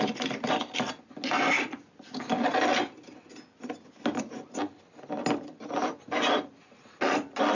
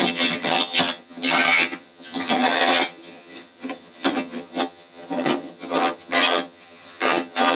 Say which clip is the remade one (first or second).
second